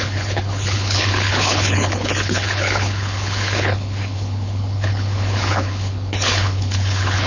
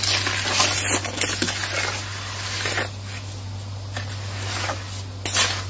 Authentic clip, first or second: second